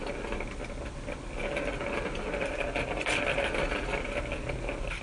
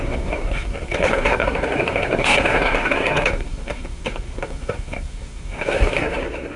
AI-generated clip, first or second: second